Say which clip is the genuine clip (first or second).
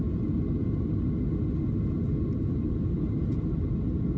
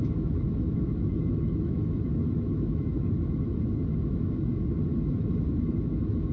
first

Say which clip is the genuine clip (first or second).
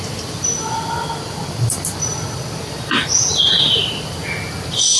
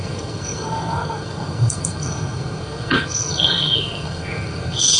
first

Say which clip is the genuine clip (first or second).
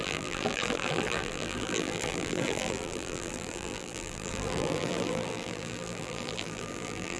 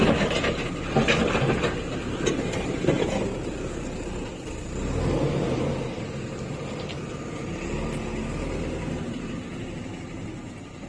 second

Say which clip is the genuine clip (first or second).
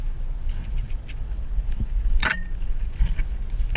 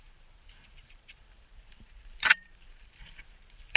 first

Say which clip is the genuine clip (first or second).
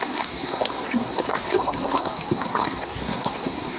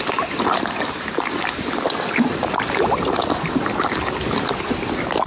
second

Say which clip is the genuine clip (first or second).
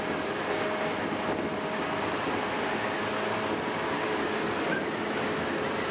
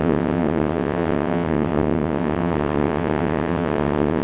first